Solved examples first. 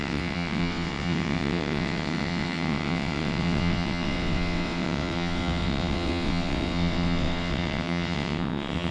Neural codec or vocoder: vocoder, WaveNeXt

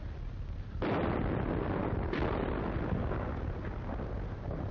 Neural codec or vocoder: none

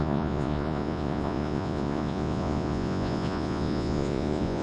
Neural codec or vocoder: vocoder, Vocos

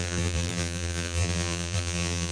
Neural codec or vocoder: vocoder, BigVGAN v2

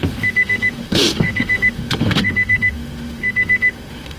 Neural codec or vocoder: autoencoder, DAC-VAE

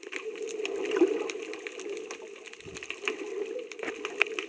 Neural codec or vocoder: none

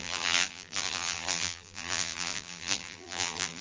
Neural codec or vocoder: vocoder, BigVGAN v2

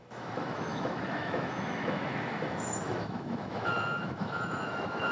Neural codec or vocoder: autoencoder, DAC-VAE